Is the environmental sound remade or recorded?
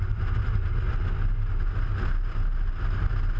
recorded